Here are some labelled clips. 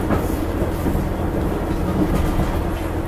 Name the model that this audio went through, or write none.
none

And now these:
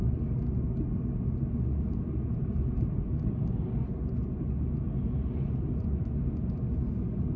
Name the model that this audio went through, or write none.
none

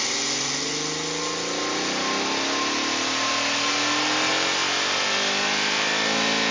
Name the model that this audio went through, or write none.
none